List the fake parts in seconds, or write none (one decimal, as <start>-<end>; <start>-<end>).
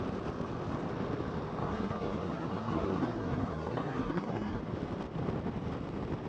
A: 1.6-4.6